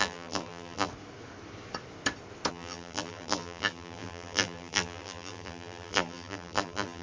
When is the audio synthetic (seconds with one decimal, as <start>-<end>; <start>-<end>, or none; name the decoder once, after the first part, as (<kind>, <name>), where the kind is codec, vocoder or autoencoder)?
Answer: 0.0-0.9 (vocoder, BigVGAN v2); 2.5-7.0